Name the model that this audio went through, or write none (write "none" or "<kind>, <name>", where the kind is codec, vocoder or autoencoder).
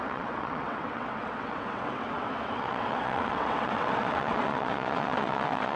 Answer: vocoder, WaveNeXt